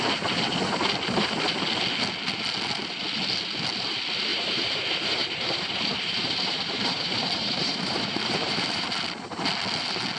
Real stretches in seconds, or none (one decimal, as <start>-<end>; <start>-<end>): 0.0-4.3; 8.9-10.2